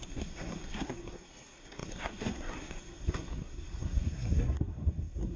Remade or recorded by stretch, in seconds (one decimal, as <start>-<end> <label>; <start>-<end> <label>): 0.0-5.4 remade